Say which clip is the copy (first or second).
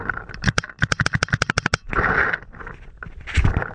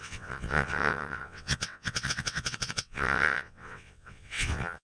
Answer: second